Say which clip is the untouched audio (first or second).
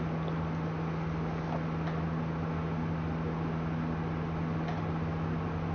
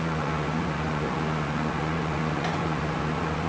first